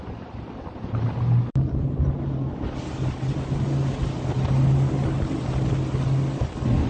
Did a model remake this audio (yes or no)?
no